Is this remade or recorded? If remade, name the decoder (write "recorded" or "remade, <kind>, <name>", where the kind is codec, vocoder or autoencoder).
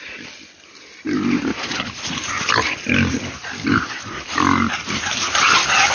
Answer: recorded